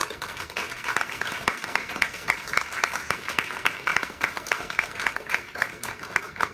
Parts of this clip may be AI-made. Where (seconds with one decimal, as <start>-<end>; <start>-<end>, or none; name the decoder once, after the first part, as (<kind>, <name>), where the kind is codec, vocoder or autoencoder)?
0.0-6.5 (codec, SNAC)